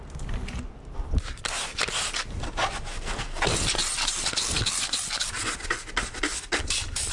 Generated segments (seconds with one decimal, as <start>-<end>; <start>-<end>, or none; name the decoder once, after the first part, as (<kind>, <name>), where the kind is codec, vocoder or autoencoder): 2.9-3.4 (codec, SNAC)